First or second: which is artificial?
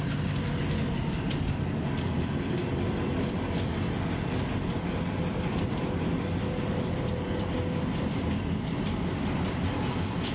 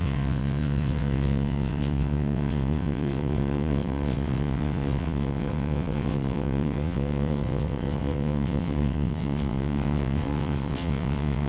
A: second